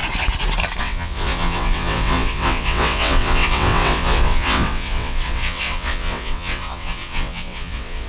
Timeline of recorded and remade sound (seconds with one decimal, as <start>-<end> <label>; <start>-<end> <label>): 0.0-0.8 recorded; 0.8-8.1 remade